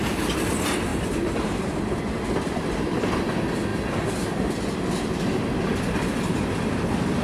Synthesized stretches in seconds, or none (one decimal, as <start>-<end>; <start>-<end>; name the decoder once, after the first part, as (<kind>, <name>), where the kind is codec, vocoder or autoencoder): 0.9-2.0 (vocoder, BigVGAN v2)

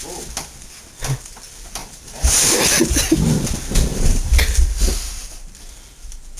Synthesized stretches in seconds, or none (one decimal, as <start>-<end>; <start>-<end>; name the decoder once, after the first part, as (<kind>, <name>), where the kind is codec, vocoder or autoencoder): 1.8-2.7 (vocoder, BigVGAN v2); 3.9-5.5